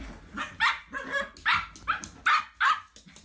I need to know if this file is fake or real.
real